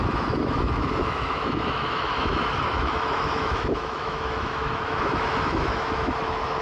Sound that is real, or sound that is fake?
fake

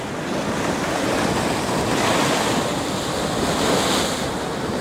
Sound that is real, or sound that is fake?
real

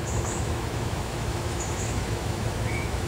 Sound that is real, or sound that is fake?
fake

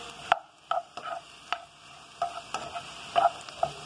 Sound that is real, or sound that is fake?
real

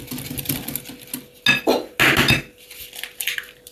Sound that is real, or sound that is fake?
real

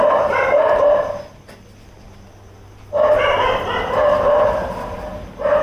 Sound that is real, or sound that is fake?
real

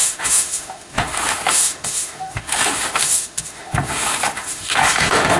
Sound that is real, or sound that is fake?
fake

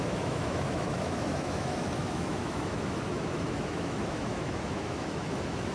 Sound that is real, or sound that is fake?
fake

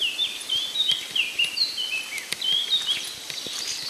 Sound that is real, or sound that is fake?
real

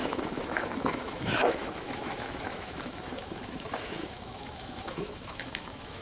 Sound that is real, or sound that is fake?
fake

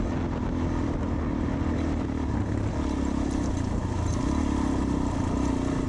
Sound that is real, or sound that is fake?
real